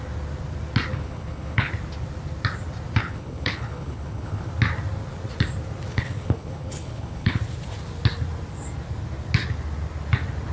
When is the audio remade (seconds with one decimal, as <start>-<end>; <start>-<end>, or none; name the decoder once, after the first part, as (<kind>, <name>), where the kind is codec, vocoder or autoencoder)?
0.9-1.7 (codec, HILCodec); 3.0-4.5; 5.9-7.4